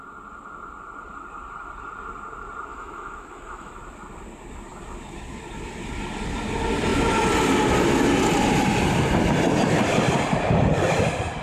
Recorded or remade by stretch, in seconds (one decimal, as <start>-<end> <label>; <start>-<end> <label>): 0.0-2.7 recorded; 2.7-3.7 remade; 3.7-11.4 recorded